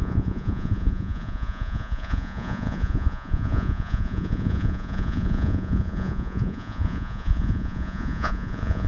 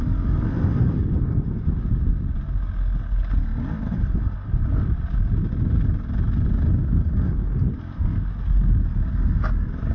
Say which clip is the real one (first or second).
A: second